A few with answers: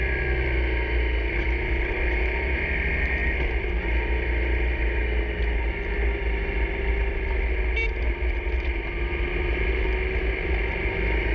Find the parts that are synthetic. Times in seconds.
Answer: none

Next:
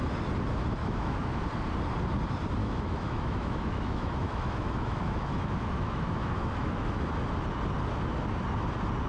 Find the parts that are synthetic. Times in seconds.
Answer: 0.8-1.4; 2.6-7.0

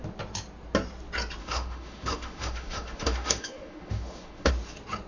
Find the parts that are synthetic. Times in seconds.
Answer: 1.4-4.5

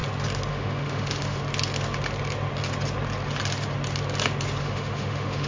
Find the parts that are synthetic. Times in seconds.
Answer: 0.5-1.4; 4.6-5.5

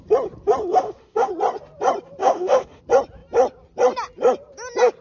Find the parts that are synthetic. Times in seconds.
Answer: 0.7-1.3; 2.2-2.8